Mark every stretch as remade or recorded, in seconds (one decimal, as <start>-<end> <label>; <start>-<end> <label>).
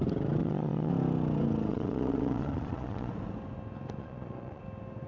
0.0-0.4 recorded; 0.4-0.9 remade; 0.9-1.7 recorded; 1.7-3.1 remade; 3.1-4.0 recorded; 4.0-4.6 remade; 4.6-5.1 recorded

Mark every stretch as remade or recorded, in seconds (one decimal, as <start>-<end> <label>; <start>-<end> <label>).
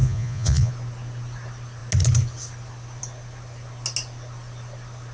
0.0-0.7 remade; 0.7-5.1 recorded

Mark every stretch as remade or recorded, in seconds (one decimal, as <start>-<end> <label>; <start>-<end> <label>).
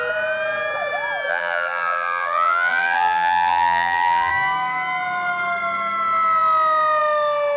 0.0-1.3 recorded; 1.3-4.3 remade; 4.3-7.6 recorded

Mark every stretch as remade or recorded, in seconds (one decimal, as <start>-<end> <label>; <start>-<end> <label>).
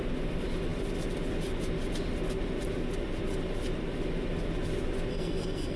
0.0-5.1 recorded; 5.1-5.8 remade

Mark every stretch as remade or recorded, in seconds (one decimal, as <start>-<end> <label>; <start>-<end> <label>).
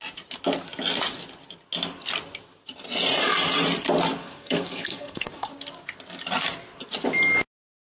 0.0-4.2 recorded; 4.2-5.5 remade; 5.5-7.8 recorded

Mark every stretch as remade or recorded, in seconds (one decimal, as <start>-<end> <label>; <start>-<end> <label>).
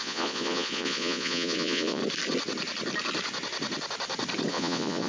0.0-2.0 remade; 2.0-4.5 recorded; 4.5-5.1 remade